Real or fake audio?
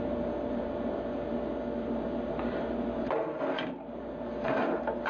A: real